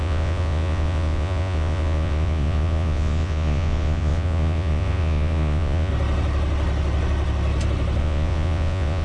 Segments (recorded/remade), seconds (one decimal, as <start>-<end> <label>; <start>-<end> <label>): 0.0-5.9 remade; 5.9-8.0 recorded; 8.0-9.0 remade